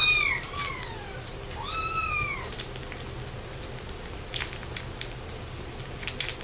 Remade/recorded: recorded